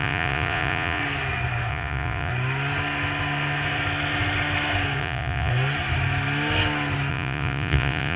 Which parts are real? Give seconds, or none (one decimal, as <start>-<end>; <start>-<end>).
1.0-1.7; 2.3-5.0; 5.5-7.1